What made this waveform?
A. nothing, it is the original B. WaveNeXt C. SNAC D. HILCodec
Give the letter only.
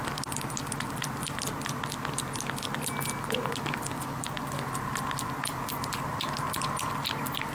A